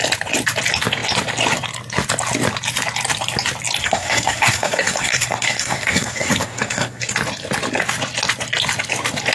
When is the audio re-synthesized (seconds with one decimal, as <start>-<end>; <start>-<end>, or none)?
3.8-7.1